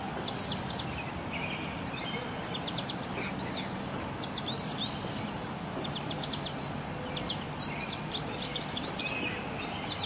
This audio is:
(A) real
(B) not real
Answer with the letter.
A